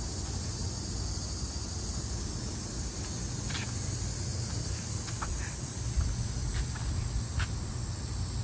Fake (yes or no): no